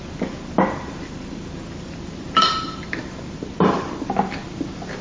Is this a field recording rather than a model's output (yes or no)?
no